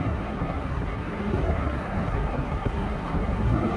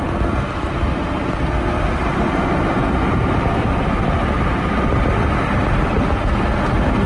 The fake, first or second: first